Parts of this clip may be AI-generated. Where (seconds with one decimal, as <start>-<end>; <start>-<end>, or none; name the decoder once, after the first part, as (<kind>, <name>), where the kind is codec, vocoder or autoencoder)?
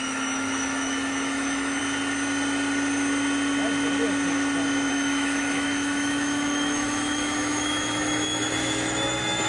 0.0-1.8 (autoencoder, DAC-VAE); 4.9-9.5